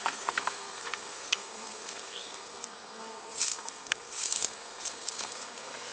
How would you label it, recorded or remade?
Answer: remade